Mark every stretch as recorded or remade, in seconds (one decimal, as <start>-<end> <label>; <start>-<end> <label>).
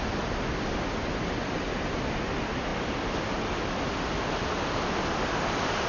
0.0-5.9 recorded